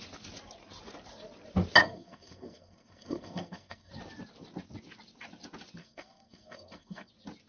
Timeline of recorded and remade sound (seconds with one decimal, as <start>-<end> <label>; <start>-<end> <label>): 0.0-1.8 recorded; 1.8-3.9 remade; 3.9-5.8 recorded; 5.8-7.1 remade; 7.1-7.5 recorded

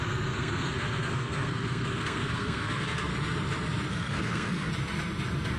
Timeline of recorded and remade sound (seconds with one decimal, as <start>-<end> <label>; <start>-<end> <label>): 0.0-3.1 remade; 3.1-3.9 recorded; 3.9-4.7 remade; 4.7-5.6 recorded

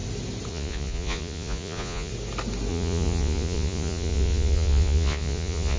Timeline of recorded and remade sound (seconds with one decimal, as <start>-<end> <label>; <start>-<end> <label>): 0.0-0.5 recorded; 0.5-2.1 remade; 2.1-2.7 recorded; 2.7-5.8 remade

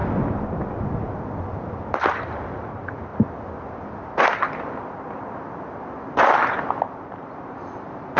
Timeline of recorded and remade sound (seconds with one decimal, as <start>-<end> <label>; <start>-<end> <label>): 0.0-1.9 recorded; 1.9-3.1 remade; 3.1-7.1 recorded; 7.1-8.2 remade

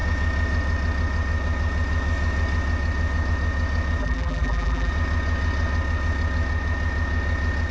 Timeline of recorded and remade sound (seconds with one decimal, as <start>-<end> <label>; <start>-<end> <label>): 0.0-4.0 recorded; 4.0-4.9 remade; 4.9-7.7 recorded

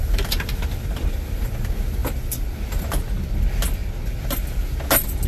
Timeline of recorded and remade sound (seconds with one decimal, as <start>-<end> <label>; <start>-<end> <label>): 0.0-5.3 recorded

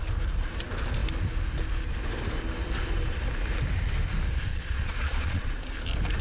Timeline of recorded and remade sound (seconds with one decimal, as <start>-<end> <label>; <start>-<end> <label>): 0.0-4.5 recorded; 4.5-5.5 remade; 5.5-6.2 recorded